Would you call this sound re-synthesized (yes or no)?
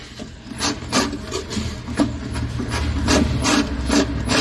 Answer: no